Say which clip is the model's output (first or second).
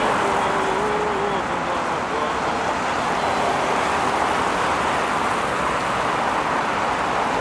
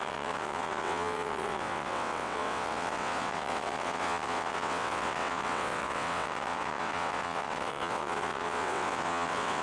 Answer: second